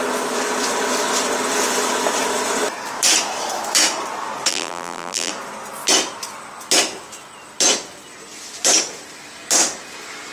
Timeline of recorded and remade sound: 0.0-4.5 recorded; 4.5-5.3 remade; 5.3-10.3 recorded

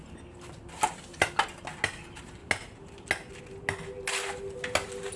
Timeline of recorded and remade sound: 0.0-5.2 recorded